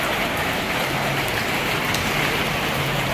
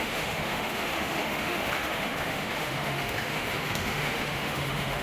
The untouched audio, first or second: first